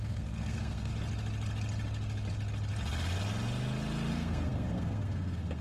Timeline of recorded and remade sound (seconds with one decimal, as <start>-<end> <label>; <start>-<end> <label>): 0.0-0.9 remade; 0.9-4.1 recorded; 4.1-5.6 remade